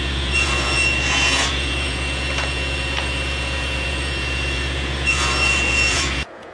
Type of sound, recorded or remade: remade